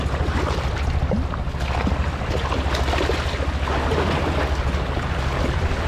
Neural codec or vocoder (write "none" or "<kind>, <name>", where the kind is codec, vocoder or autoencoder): none